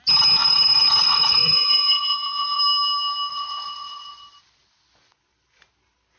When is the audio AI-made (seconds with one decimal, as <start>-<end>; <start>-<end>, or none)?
0.4-2.6; 3.3-4.4